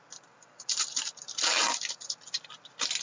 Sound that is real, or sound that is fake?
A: real